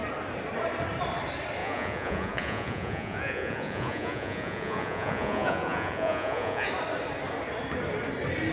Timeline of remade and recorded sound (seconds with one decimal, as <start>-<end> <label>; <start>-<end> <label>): 0.0-1.6 recorded; 1.6-6.7 remade; 6.7-8.5 recorded